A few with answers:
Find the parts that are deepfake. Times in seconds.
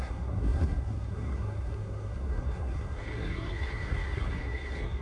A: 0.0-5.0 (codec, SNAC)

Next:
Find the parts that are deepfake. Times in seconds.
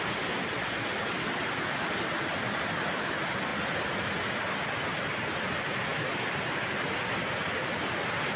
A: none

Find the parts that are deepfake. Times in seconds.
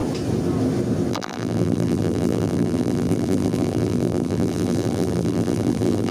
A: 1.1-6.1 (vocoder, BigVGAN v2)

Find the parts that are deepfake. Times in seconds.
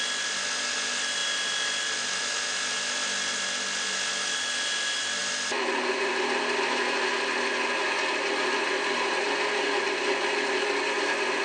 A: 1.2-2.2 (vocoder, BigVGAN v2)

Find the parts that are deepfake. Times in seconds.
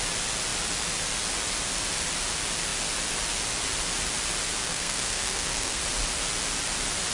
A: 4.6-5.8 (codec, SNAC)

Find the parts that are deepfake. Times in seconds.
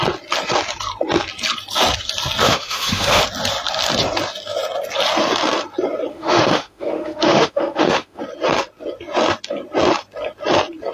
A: 2.4-3.2 (autoencoder, DAC-VAE); 6.1-8.2